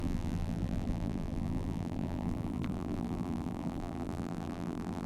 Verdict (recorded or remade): remade